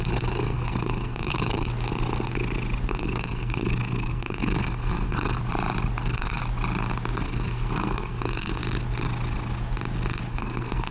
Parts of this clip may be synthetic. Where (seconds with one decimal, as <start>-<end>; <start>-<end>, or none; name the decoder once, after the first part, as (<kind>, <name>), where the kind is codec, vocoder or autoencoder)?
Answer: 0.0-1.7 (codec, SNAC); 2.9-5.4; 6.0-6.4; 7.2-8.6; 10.3-10.9